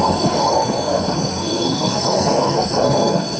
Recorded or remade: remade